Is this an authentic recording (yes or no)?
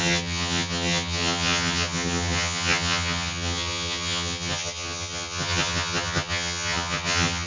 no